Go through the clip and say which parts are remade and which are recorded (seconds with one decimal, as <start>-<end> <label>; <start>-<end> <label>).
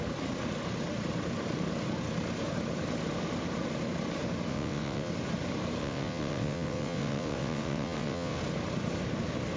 0.0-4.5 recorded; 4.5-5.1 remade; 5.1-5.8 recorded; 5.8-8.4 remade; 8.4-9.6 recorded